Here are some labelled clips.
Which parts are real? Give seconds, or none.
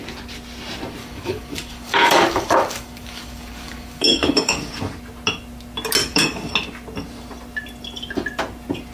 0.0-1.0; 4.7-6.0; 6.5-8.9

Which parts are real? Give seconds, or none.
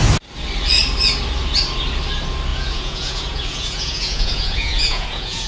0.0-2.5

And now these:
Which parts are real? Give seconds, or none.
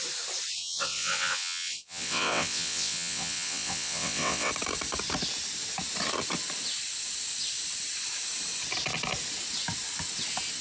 0.0-0.6; 4.5-10.6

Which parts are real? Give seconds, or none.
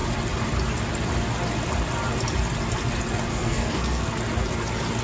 0.0-3.3; 4.1-5.0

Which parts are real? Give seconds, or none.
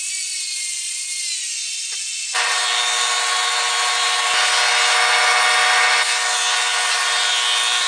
0.0-7.9